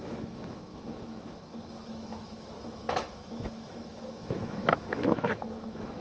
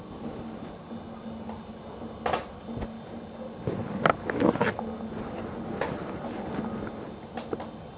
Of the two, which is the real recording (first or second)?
second